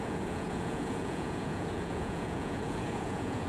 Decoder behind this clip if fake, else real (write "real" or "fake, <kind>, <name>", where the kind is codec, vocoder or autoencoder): fake, vocoder, Vocos